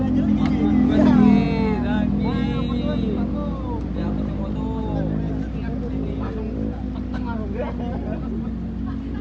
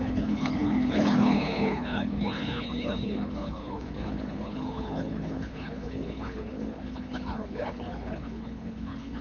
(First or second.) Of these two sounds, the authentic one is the first